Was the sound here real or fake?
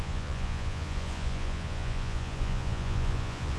fake